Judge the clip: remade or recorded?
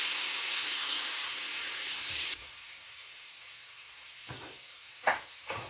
remade